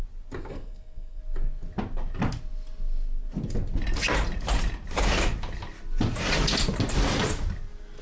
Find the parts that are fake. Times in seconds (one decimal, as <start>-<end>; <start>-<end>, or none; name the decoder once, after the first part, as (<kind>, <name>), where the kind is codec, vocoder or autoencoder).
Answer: 0.5-1.2 (codec, SNAC)